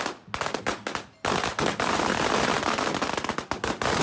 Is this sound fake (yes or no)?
no